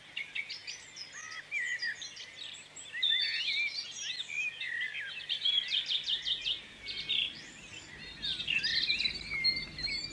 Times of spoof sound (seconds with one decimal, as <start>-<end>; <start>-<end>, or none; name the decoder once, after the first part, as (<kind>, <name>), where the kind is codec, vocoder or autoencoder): none